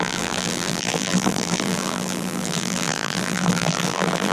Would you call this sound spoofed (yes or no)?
yes